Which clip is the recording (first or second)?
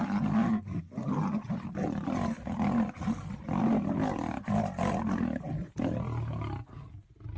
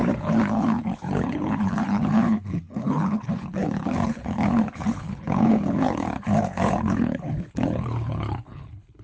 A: first